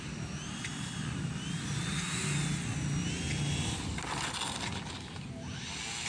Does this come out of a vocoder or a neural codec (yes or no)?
no